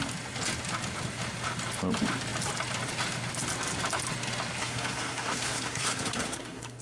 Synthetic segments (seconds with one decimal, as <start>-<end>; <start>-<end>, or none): 4.6-6.8